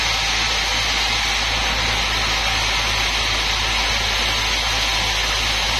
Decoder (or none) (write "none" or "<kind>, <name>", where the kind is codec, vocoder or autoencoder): none